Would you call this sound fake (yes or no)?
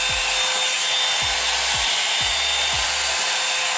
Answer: no